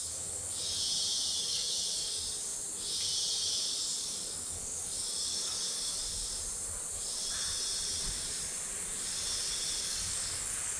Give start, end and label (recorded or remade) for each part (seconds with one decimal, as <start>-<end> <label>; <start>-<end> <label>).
0.0-0.8 remade; 0.8-1.4 recorded; 1.4-2.5 remade; 2.5-4.0 recorded; 4.0-6.0 remade; 6.0-9.8 recorded; 9.8-10.8 remade